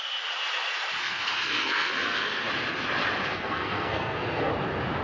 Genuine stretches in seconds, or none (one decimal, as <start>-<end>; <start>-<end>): 0.0-1.0; 2.5-3.3; 4.5-5.0